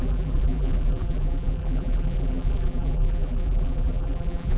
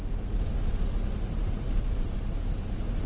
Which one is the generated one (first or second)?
first